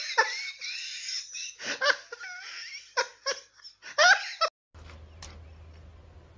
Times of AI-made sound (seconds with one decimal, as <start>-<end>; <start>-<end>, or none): none